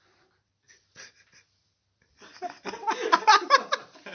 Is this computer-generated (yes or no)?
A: no